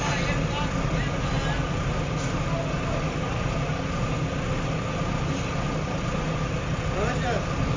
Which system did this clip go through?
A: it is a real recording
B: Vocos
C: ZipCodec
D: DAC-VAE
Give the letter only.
A